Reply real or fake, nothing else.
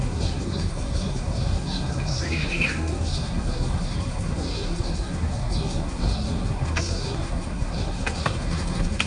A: fake